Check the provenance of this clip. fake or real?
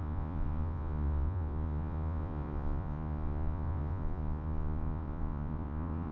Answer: fake